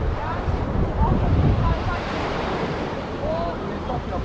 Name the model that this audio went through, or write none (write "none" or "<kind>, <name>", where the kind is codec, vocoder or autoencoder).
vocoder, BigVGAN v2